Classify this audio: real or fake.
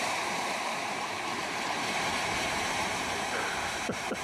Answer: fake